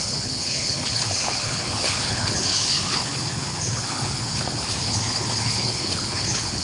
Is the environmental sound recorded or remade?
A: remade